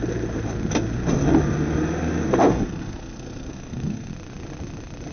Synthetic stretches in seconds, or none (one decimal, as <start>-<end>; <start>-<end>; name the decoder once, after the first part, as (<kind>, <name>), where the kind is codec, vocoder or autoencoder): 2.5-4.1 (codec, SNAC)